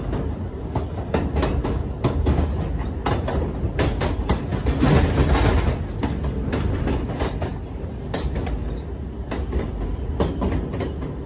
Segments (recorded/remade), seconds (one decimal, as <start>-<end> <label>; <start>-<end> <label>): 0.0-11.3 recorded